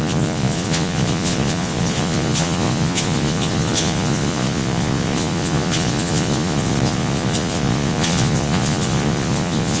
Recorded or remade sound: remade